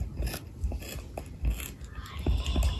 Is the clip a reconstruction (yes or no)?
no